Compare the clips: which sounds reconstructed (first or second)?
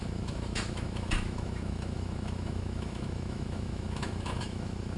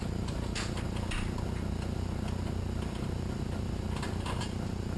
first